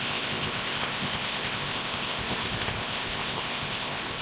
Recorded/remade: remade